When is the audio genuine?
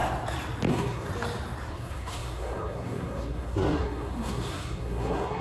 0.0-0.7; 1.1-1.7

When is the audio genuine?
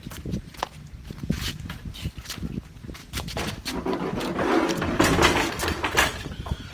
0.0-3.0; 3.5-6.7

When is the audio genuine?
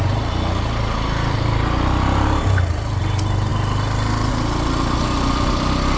0.0-6.0